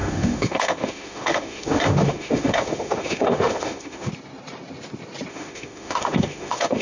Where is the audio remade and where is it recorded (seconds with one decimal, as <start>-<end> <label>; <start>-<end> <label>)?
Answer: 0.0-4.1 remade; 4.1-5.3 recorded; 5.3-6.8 remade